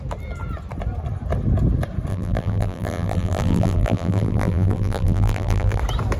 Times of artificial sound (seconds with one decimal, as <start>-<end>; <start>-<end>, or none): 2.1-5.8